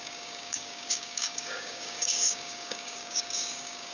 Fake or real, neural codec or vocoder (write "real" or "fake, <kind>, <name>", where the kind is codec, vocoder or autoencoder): fake, codec, DAC